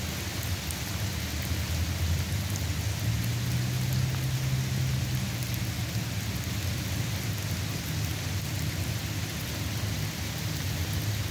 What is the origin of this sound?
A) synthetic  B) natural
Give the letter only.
B